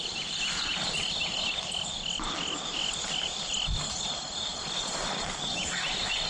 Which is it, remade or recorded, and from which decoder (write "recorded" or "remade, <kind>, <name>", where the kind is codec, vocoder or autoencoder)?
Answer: recorded